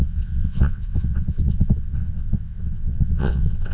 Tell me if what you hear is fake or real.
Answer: fake